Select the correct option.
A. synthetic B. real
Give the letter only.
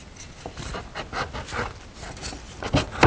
B